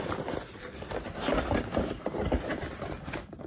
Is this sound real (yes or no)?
no